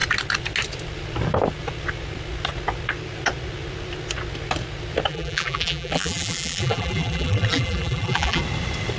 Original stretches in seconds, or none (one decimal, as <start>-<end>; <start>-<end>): 0.0-5.1; 8.4-9.0